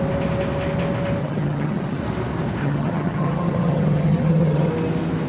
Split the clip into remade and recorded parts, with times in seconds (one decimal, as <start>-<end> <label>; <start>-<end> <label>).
0.0-1.2 recorded; 1.2-2.0 remade; 2.0-2.6 recorded; 2.6-4.7 remade; 4.7-5.3 recorded